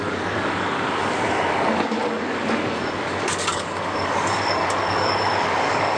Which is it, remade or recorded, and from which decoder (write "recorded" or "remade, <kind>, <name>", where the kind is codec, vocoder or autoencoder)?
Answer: remade, codec, DAC